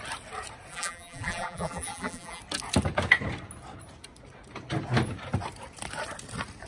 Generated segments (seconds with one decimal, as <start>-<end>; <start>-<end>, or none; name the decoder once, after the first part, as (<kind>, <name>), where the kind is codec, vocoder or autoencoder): 0.7-2.4 (vocoder, BigVGAN v2)